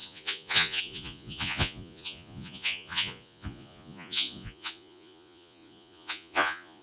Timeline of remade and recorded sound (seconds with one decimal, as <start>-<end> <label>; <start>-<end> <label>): 0.0-6.8 remade

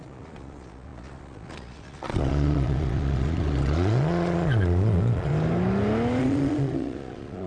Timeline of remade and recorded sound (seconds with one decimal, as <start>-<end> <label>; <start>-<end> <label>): 0.0-5.3 remade; 5.3-6.2 recorded; 6.2-7.5 remade